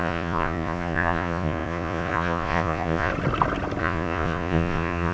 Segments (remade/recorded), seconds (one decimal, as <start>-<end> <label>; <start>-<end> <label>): 0.0-3.1 remade; 3.1-3.8 recorded; 3.8-5.1 remade